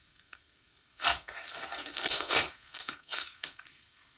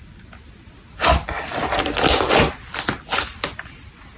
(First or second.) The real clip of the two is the second